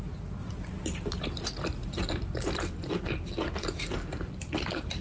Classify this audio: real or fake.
real